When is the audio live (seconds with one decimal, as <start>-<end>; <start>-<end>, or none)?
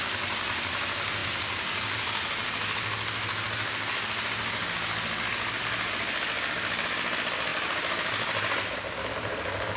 0.0-9.8